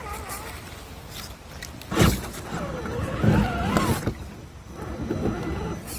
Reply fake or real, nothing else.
real